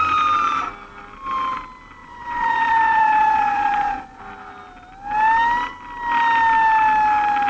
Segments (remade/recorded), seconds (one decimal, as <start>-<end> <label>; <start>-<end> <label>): 0.0-2.0 recorded; 2.0-4.2 remade; 4.2-7.5 recorded